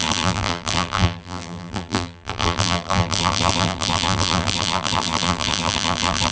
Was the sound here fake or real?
fake